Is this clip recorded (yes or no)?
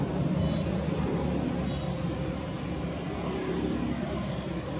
yes